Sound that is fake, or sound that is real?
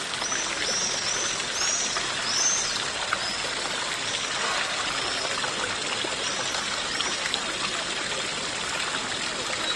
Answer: real